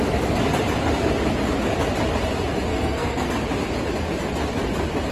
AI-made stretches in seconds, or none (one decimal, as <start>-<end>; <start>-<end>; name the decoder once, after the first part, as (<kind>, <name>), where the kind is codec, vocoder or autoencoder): 2.7-3.3 (codec, SNAC)